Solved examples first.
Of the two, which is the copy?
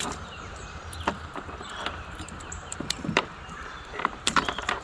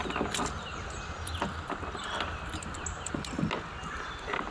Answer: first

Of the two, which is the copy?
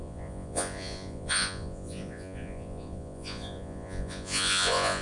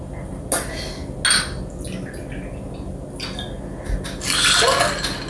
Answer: first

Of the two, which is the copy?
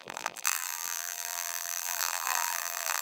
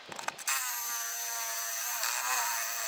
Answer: first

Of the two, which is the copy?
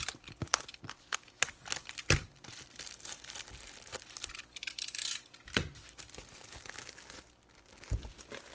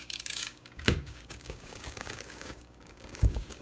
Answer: second